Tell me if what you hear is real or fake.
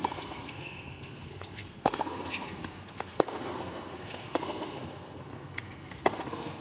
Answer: fake